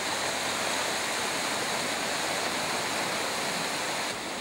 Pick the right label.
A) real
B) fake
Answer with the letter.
A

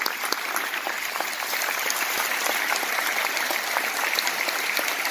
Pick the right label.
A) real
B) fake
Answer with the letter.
A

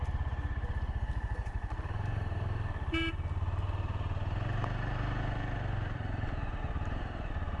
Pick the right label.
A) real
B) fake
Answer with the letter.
B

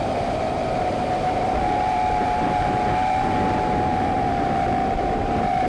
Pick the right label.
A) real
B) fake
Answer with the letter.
B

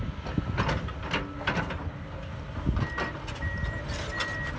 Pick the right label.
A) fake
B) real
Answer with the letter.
B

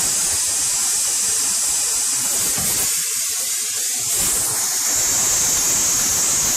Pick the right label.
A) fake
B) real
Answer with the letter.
B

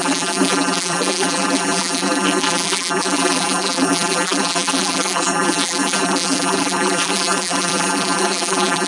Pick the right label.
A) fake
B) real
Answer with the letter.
A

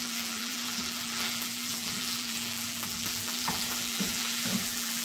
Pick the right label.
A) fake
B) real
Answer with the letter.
A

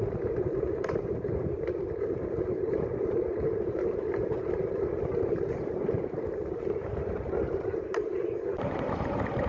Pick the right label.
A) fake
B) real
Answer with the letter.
A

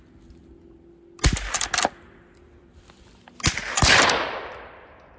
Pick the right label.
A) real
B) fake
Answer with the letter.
A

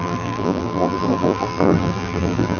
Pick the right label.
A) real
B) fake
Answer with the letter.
B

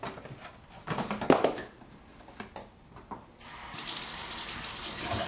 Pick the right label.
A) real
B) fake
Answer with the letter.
A